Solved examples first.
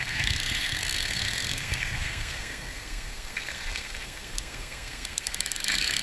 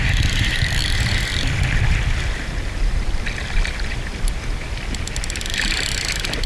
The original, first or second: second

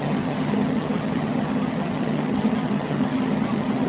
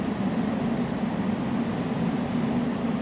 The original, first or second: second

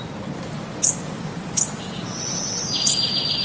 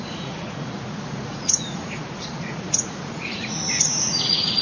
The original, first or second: first